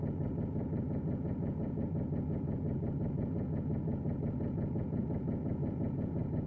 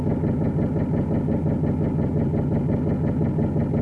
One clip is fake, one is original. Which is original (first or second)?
second